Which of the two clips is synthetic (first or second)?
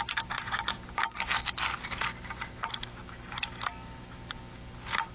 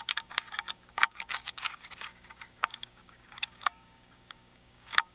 second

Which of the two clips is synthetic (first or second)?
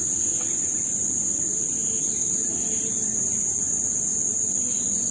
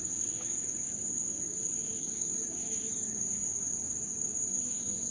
second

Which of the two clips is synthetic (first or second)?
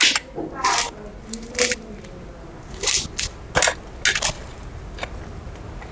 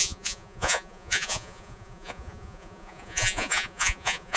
second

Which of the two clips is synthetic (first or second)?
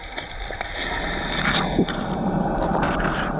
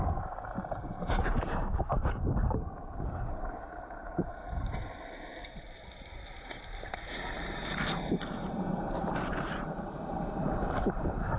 second